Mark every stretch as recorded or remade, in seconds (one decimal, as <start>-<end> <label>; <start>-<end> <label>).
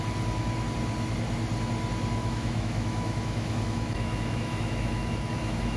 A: 0.0-2.2 recorded; 2.2-5.8 remade